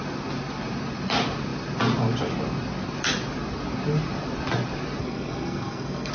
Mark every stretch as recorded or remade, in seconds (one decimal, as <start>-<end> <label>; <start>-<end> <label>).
0.0-5.0 recorded; 5.0-6.1 remade

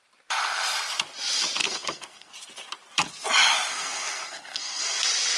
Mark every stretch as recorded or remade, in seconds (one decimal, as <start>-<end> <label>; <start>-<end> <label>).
0.0-1.6 recorded; 1.6-2.3 remade; 2.3-3.7 recorded; 3.7-5.0 remade; 5.0-5.4 recorded

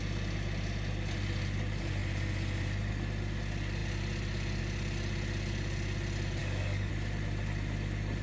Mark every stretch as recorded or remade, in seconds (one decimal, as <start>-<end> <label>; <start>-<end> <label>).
0.0-6.4 recorded; 6.4-6.9 remade; 6.9-8.2 recorded

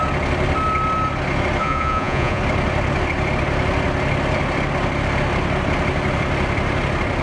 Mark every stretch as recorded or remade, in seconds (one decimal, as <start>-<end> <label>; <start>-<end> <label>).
0.0-1.6 recorded; 1.6-2.4 remade; 2.4-7.2 recorded

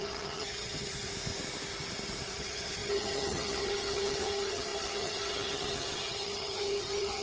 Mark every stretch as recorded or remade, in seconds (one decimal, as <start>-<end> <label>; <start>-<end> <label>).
0.0-1.1 remade; 1.1-2.2 recorded; 2.2-7.2 remade